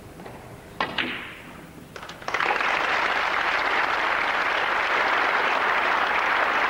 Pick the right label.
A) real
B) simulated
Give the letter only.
B